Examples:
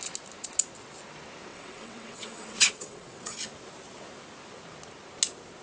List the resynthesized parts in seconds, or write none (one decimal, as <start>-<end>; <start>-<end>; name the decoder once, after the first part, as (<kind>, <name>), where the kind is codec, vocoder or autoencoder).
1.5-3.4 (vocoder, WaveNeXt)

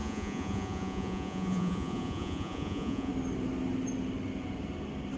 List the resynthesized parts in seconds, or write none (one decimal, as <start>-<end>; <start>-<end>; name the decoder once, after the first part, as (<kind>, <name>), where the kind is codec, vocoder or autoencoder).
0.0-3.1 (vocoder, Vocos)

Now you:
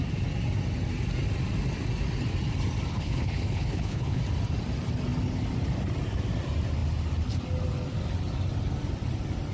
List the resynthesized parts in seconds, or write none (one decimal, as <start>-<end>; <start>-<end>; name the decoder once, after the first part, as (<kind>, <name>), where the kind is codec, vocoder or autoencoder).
2.9-4.2 (codec, HILCodec)

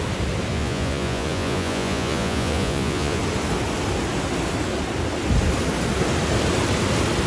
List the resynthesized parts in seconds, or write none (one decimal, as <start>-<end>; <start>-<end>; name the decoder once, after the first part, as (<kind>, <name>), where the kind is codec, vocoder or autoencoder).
0.5-3.2 (vocoder, Vocos)

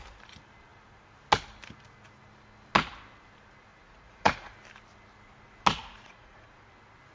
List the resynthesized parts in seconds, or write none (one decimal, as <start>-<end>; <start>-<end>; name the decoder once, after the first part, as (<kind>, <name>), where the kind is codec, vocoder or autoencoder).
3.7-4.5 (vocoder, Vocos); 5.8-6.5